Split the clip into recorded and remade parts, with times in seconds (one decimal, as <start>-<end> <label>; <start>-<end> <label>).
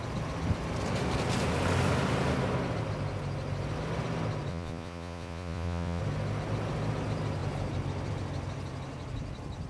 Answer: 0.0-4.5 recorded; 4.5-6.0 remade; 6.0-9.7 recorded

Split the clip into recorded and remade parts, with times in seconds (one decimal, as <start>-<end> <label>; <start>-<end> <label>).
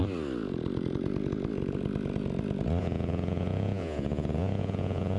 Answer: 0.0-2.8 recorded; 2.8-5.2 remade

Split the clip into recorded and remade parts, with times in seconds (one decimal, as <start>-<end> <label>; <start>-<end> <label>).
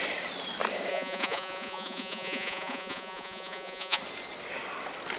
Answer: 0.0-0.9 recorded; 0.9-4.0 remade; 4.0-5.2 recorded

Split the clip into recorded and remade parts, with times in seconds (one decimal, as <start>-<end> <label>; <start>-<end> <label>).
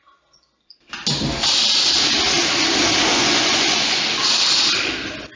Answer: 0.0-3.1 recorded; 3.1-4.0 remade; 4.0-5.4 recorded